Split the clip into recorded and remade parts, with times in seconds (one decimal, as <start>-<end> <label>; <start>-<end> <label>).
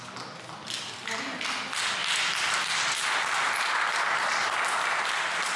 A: 0.0-5.6 recorded